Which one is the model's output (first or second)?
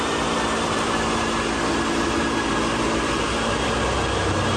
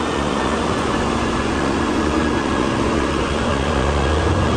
second